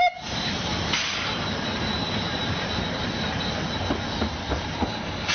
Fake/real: real